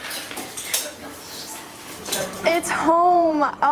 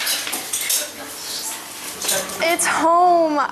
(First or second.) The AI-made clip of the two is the first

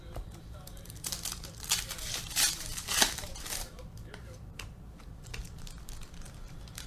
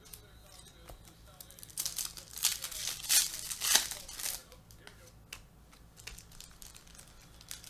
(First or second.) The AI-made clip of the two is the first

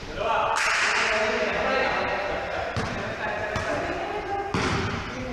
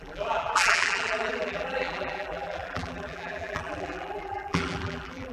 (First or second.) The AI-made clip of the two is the second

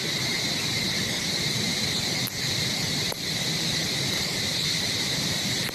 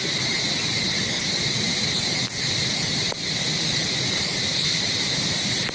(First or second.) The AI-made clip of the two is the first